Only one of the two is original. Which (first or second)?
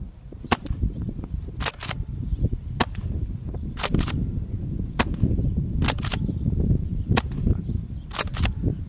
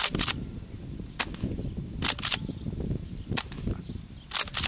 second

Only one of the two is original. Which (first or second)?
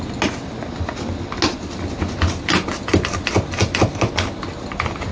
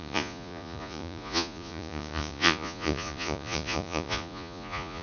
first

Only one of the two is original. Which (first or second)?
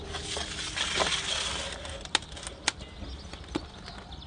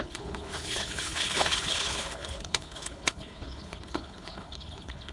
first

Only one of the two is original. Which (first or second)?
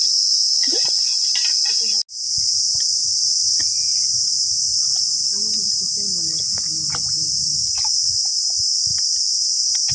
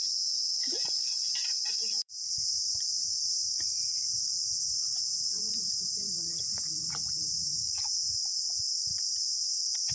first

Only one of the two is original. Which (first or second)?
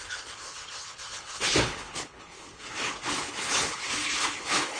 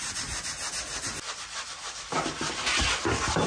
second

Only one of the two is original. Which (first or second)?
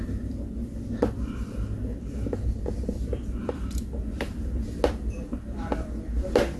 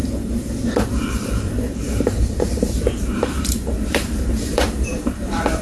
first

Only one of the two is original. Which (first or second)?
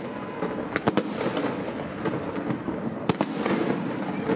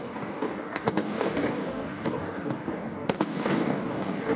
first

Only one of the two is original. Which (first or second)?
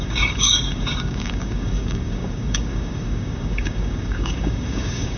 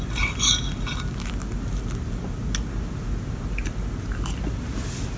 second